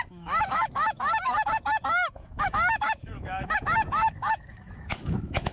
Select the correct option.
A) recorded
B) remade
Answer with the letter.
B